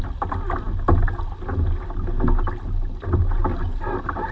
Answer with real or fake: real